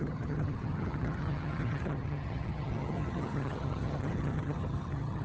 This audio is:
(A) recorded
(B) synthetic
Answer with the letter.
B